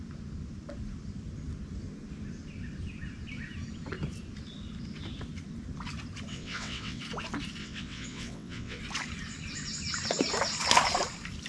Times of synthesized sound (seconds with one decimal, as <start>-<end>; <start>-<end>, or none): 6.3-7.0; 7.6-8.8